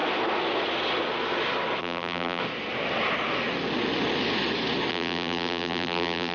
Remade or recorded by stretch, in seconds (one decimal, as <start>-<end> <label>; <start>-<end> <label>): 0.0-1.8 recorded; 1.8-2.4 remade; 2.4-4.9 recorded; 4.9-6.3 remade